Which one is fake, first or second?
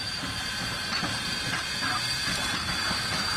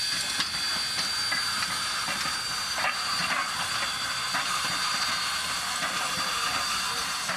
first